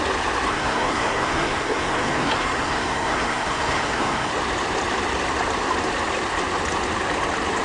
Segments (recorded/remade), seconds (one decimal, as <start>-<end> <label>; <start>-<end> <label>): 0.0-0.5 recorded; 0.5-4.3 remade; 4.3-7.6 recorded